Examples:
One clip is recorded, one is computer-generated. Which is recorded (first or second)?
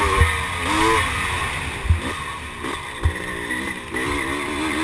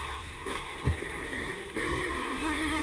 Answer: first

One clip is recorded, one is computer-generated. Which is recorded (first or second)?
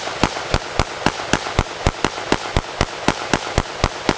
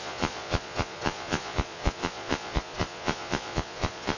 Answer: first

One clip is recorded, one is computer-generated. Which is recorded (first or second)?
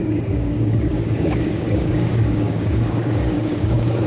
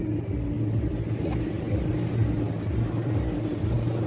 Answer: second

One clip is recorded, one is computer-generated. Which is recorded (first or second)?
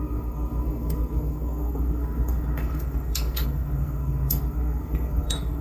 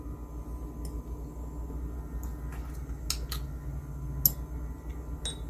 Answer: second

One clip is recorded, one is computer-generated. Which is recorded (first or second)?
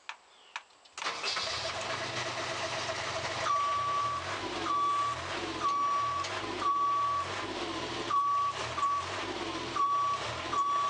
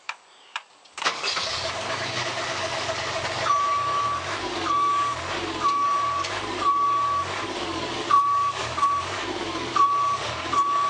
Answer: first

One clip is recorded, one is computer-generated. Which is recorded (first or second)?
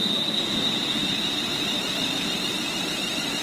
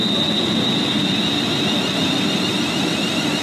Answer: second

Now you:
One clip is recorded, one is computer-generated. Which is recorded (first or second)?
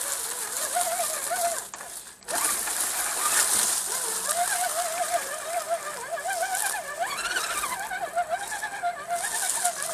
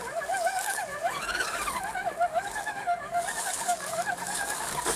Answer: first